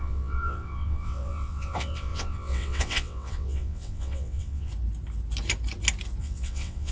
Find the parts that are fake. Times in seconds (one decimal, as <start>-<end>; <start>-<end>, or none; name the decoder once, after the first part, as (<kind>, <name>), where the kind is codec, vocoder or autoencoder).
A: 0.0-4.7 (vocoder, WaveNeXt); 6.2-6.9